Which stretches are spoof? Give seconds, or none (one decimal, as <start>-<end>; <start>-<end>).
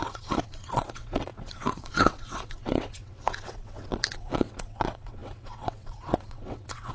0.0-6.9